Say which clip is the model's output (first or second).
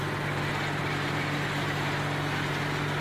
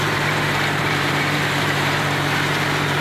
second